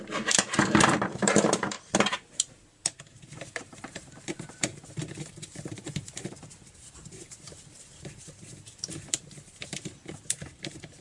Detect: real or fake fake